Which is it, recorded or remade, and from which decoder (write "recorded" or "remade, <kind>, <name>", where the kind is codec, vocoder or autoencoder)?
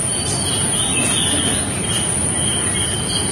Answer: recorded